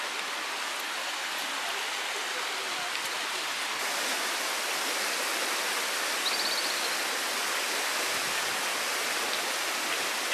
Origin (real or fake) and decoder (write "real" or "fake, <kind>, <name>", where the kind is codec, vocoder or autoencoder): real